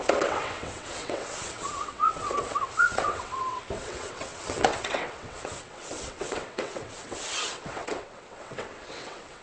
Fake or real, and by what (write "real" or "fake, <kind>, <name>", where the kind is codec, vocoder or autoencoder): fake, vocoder, WaveNeXt